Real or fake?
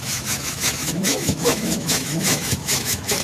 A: fake